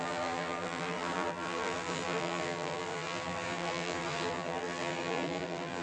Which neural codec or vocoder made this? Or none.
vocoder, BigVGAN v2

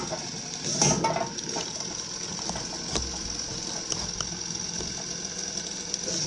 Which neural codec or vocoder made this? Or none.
none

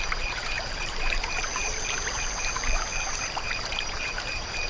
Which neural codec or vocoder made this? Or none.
vocoder, BigVGAN v2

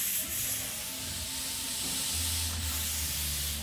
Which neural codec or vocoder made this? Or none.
none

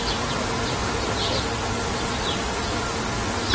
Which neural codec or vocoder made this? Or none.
none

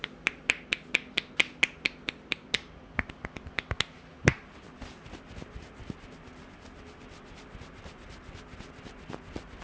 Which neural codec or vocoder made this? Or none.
none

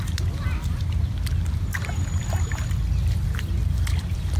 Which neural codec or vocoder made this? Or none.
none